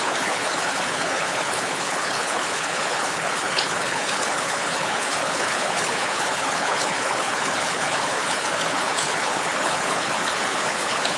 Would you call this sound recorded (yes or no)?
no